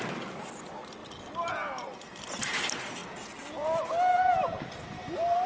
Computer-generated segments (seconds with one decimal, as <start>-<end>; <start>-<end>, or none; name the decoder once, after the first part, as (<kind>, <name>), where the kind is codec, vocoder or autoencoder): none